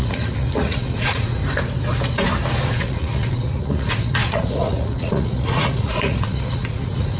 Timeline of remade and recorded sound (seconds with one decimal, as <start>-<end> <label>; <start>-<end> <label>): 0.0-1.4 remade; 1.4-2.7 recorded; 2.7-7.2 remade